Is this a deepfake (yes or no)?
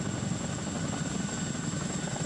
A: no